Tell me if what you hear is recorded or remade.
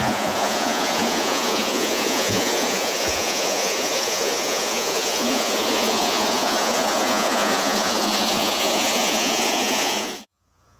remade